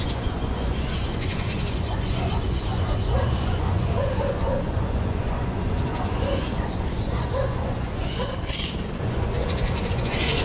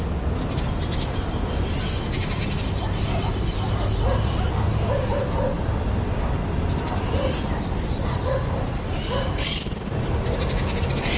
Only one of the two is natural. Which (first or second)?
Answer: second